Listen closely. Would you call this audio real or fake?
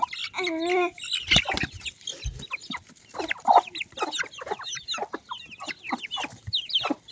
real